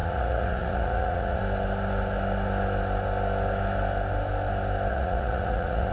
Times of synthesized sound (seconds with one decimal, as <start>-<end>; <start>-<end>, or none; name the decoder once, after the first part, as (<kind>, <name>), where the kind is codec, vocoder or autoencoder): 0.0-1.4 (vocoder, Vocos); 4.9-5.9